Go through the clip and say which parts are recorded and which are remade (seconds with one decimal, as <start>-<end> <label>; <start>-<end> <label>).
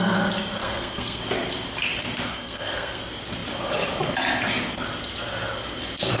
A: 0.0-0.6 recorded; 0.6-1.2 remade; 1.2-2.3 recorded; 2.3-3.0 remade; 3.0-6.2 recorded